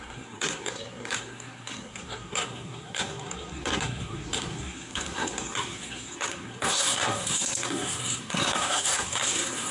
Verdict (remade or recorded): remade